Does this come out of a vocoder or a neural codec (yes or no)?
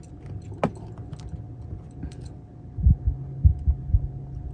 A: no